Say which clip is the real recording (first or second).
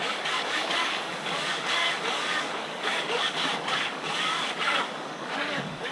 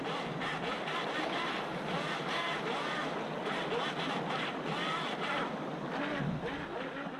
second